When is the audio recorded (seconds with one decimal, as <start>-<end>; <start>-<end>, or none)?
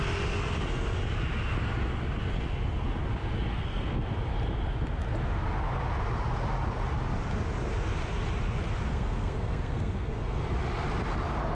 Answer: 0.0-3.5; 4.1-8.9; 10.5-11.5